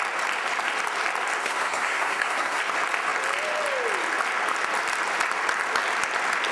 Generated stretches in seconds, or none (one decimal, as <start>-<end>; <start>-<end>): 1.4-2.6